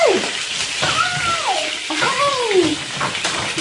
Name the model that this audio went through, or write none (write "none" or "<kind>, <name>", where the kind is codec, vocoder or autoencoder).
none